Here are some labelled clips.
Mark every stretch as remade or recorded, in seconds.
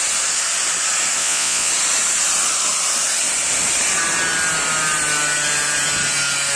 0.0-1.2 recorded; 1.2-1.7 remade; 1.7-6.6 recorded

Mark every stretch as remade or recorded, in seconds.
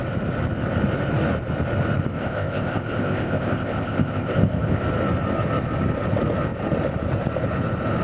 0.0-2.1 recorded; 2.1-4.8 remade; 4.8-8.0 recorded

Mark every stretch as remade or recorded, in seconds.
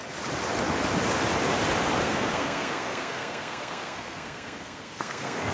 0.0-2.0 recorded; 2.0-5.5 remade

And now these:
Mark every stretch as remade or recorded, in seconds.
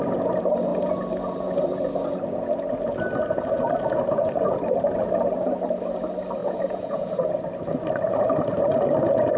0.0-6.4 recorded; 6.4-7.1 remade; 7.1-9.4 recorded